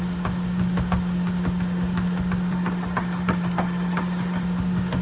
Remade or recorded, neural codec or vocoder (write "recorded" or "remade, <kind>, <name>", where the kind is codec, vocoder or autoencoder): recorded